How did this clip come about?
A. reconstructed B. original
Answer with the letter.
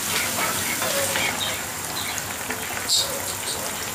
B